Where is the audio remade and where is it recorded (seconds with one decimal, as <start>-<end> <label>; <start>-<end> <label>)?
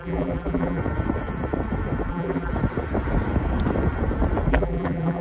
0.0-0.8 remade; 0.8-2.1 recorded; 2.1-2.5 remade; 2.5-4.5 recorded; 4.5-5.2 remade